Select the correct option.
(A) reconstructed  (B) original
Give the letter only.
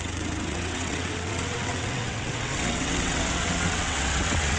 A